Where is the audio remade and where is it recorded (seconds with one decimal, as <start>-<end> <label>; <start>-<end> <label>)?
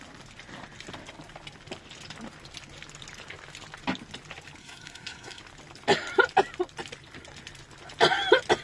0.0-4.6 recorded; 4.6-5.4 remade; 5.4-8.6 recorded